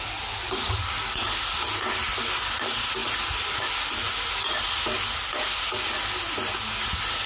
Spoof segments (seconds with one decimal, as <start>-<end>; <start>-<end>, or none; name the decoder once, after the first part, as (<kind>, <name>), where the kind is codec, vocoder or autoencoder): none